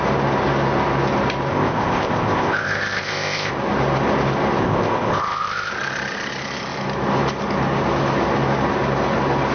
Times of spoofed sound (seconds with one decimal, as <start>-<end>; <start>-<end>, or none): 1.5-3.5; 4.6-5.7